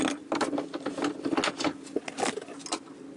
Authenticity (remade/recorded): recorded